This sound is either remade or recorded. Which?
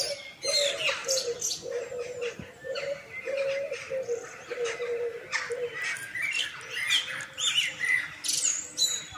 recorded